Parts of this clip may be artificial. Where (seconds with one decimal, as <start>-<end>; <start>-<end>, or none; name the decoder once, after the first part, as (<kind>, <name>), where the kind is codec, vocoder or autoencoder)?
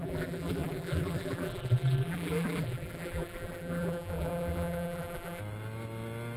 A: 0.0-5.4 (vocoder, BigVGAN v2)